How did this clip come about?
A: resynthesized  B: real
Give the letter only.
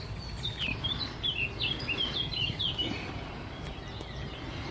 B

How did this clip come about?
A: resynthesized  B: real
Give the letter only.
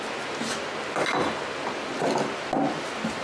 B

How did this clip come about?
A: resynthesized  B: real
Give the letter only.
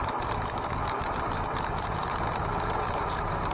A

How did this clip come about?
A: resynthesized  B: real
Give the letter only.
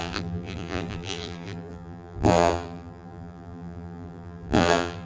A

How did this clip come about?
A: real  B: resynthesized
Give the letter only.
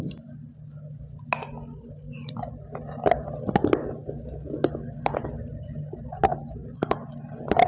A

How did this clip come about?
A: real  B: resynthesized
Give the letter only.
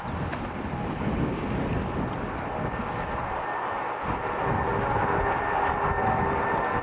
A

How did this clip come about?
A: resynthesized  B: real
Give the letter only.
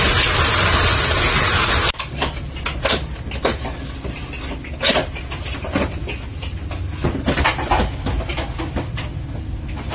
B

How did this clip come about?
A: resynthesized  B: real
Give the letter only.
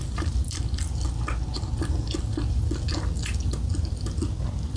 B